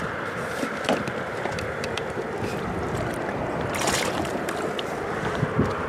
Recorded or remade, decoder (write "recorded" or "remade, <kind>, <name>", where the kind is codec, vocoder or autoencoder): remade, vocoder, BigVGAN v2